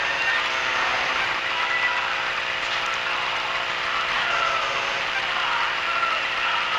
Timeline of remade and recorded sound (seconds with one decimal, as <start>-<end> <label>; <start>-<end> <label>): 0.0-0.7 recorded; 0.7-1.5 remade; 1.5-6.8 recorded

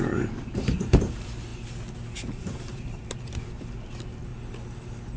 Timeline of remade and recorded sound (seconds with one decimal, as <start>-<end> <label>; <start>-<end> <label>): 0.0-1.5 remade; 1.5-2.3 recorded; 2.3-4.3 remade; 4.3-5.2 recorded

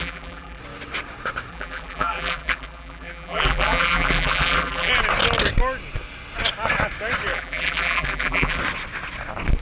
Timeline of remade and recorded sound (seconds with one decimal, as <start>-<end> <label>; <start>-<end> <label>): 0.0-0.6 remade; 0.6-1.5 recorded; 1.5-4.9 remade; 4.9-7.3 recorded; 7.3-8.6 remade; 8.6-9.6 recorded